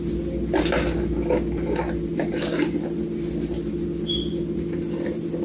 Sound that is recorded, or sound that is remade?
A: recorded